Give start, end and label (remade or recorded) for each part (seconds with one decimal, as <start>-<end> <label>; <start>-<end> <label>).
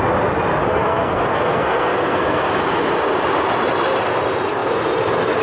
0.0-0.8 recorded; 0.8-2.5 remade; 2.5-5.4 recorded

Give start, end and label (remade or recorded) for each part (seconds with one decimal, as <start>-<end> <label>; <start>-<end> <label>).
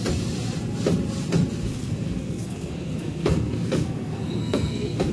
0.0-1.7 recorded; 1.7-5.1 remade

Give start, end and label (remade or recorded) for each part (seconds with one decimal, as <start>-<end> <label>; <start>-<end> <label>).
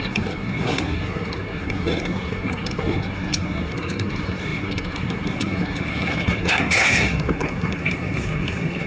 0.0-8.9 remade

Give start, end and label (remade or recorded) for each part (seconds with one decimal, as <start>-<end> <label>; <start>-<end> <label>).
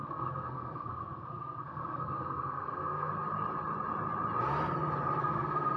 0.0-3.1 remade; 3.1-5.2 recorded; 5.2-5.8 remade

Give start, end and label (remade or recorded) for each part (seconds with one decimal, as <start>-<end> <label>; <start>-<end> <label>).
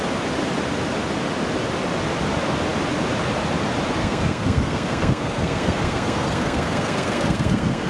0.0-4.0 recorded; 4.0-7.9 remade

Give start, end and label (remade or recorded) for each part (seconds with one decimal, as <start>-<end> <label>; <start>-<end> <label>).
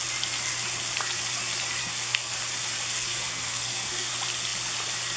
0.0-1.8 recorded; 1.8-2.3 remade; 2.3-2.9 recorded; 2.9-4.1 remade; 4.1-5.2 recorded